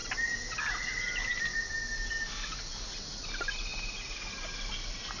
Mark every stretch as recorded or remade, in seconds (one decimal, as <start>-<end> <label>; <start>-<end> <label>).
0.0-5.2 recorded